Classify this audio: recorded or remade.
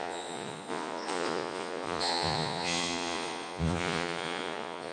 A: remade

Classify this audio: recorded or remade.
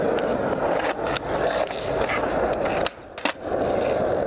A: recorded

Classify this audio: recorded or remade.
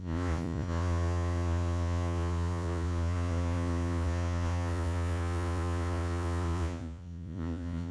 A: remade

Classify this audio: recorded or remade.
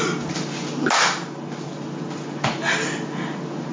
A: recorded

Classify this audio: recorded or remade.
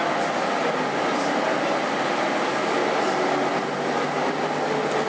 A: recorded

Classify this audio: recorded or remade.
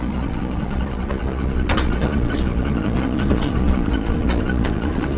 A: remade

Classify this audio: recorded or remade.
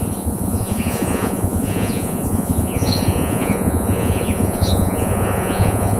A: remade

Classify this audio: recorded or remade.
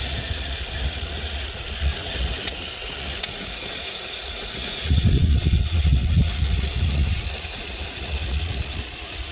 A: remade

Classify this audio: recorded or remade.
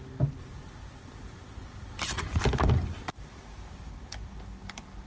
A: recorded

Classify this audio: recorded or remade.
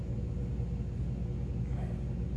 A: recorded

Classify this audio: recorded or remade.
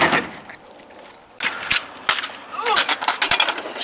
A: recorded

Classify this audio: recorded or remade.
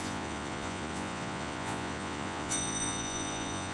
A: remade